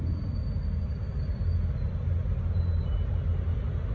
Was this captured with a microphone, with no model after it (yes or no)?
yes